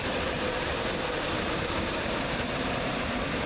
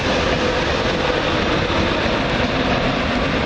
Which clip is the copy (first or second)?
first